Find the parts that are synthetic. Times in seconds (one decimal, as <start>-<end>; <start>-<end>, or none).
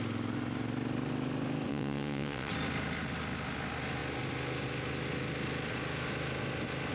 1.7-2.5